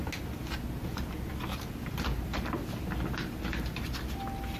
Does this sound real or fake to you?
real